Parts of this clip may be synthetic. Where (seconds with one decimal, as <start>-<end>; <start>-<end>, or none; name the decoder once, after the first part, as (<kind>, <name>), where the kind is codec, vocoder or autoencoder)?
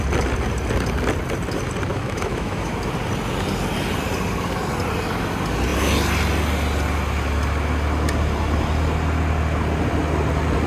1.9-2.7 (autoencoder, DAC-VAE)